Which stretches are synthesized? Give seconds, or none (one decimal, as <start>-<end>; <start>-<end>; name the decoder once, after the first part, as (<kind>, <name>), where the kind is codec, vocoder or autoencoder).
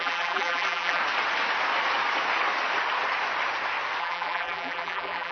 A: 0.0-1.0 (vocoder, BigVGAN v2); 4.0-5.3